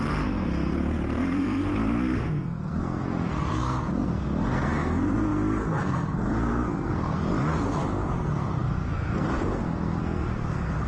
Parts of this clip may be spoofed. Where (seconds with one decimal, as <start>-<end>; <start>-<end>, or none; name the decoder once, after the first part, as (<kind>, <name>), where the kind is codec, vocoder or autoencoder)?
0.0-1.7 (codec, SNAC); 2.3-7.2; 8.1-10.9